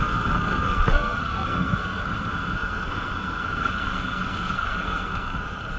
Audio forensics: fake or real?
fake